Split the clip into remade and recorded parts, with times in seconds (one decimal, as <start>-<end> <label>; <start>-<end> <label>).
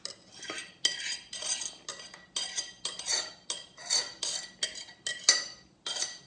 0.0-6.3 recorded